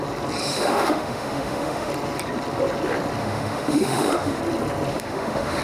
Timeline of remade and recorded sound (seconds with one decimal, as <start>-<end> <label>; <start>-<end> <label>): 0.0-0.4 recorded; 0.4-1.9 remade; 1.9-3.2 recorded; 3.2-4.4 remade; 4.4-4.9 recorded; 4.9-5.6 remade